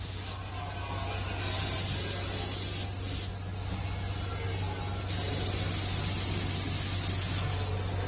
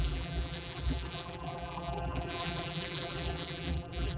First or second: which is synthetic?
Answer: second